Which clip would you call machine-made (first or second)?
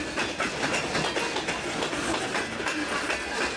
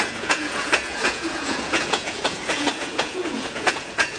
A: second